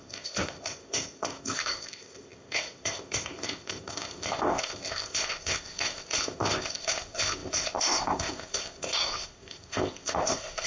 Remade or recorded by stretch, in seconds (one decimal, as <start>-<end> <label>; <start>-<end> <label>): 0.0-10.7 remade